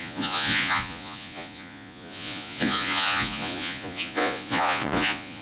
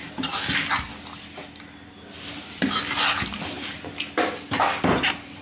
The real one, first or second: second